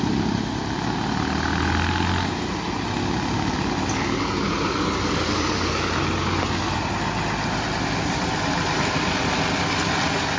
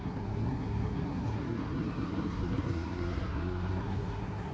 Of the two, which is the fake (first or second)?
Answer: second